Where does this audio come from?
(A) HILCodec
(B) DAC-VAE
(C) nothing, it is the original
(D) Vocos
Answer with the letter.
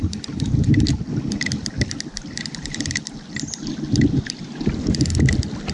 C